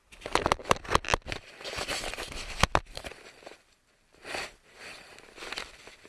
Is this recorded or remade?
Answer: recorded